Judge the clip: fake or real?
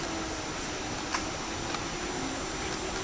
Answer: real